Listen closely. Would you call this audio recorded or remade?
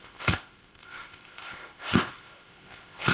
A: remade